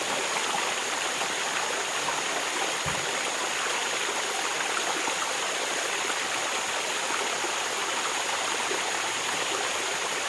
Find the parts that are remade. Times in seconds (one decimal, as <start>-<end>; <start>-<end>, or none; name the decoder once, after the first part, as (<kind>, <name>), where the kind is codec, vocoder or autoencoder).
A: 7.8-10.3 (vocoder, BigVGAN v2)